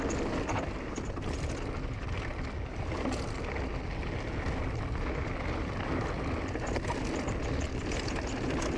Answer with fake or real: real